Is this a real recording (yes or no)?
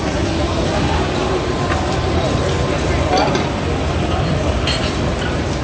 yes